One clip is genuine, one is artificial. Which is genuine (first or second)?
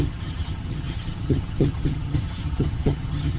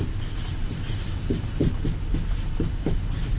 second